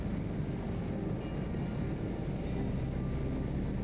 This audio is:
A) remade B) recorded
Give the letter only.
B